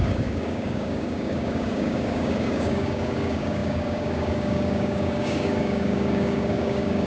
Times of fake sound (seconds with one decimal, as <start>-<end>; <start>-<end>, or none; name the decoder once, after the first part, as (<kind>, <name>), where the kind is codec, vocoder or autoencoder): 0.0-7.1 (codec, DAC)